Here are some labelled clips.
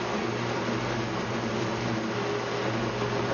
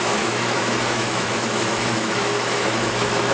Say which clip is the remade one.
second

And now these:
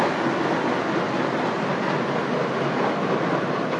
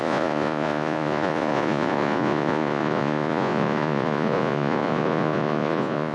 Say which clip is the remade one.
second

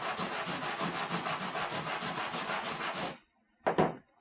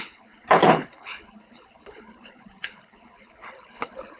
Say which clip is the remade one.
second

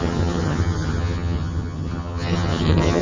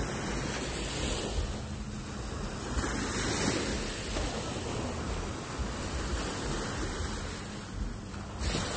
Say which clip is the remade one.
first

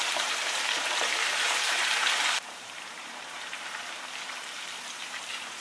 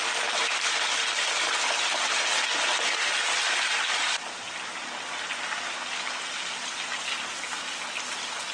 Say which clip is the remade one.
first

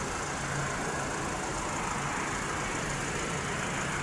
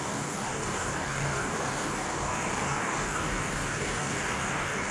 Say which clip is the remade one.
second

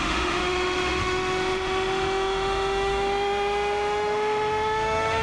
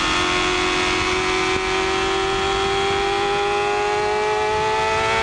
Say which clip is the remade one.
first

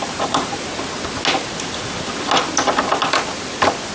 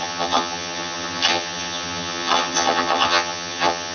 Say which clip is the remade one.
second